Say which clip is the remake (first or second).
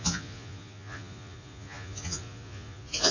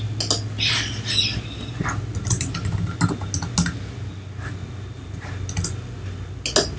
first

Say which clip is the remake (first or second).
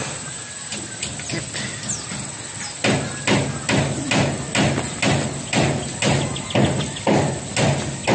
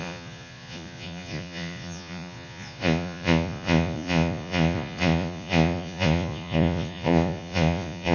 second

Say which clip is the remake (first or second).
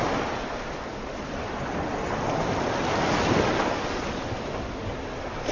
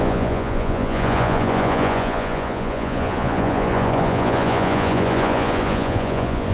second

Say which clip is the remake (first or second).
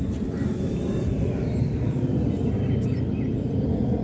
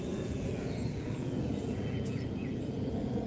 second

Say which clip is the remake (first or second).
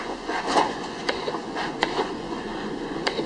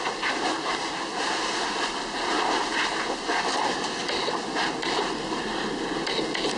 first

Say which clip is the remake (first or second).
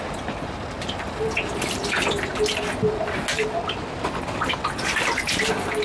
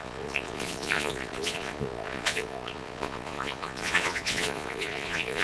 second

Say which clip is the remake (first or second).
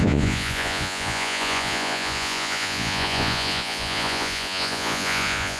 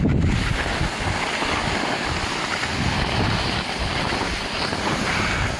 first